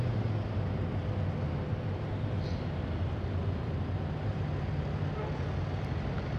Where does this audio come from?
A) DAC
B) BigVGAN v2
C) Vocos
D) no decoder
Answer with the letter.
D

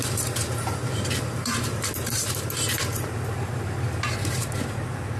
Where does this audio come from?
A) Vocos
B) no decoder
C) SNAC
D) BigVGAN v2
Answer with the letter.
D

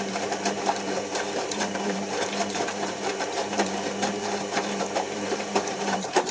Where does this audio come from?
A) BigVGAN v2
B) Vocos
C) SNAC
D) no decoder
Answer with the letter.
A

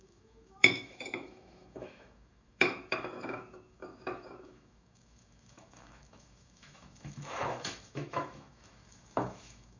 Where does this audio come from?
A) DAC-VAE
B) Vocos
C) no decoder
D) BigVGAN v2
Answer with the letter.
A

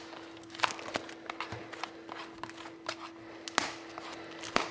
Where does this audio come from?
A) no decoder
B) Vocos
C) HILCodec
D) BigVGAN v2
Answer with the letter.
A